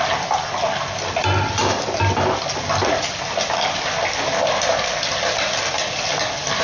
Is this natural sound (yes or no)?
yes